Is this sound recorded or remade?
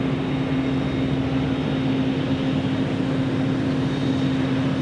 recorded